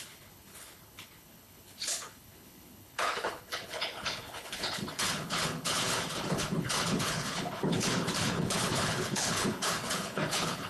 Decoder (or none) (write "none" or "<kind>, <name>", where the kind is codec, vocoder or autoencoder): codec, HILCodec